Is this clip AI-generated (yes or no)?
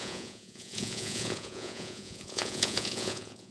yes